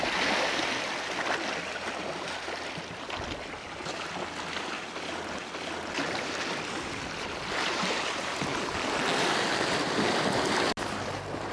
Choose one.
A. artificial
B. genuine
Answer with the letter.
B